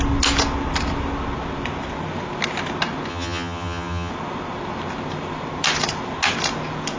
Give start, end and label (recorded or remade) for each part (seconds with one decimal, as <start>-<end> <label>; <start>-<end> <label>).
0.0-3.1 recorded; 3.1-4.1 remade; 4.1-7.0 recorded